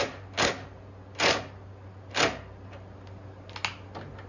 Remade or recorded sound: recorded